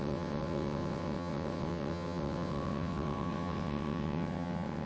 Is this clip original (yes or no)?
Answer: no